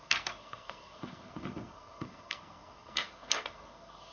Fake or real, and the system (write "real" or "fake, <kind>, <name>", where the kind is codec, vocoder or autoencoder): fake, codec, SNAC